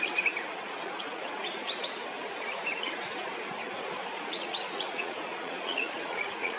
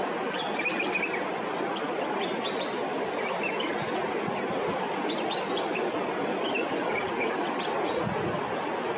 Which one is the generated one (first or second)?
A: first